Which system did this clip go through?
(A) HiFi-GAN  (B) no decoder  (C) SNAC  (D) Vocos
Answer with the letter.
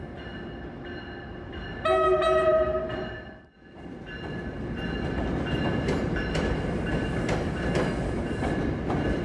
B